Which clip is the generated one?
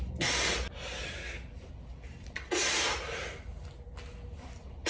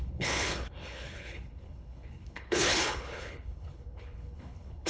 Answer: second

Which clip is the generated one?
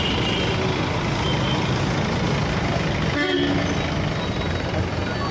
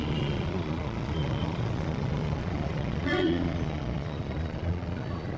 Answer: second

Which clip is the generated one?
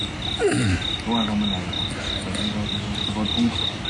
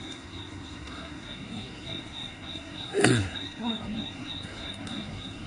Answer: second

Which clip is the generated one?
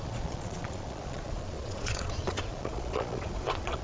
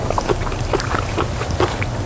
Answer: first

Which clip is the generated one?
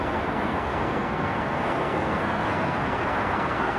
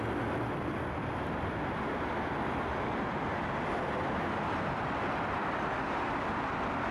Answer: first